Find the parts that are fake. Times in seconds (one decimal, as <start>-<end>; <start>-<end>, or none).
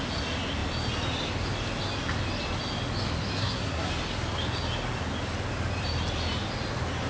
3.4-3.9